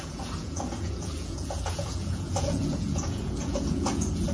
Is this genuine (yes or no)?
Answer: no